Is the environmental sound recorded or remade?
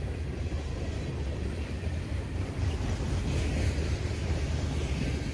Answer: recorded